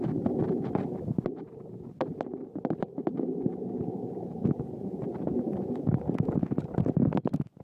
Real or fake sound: real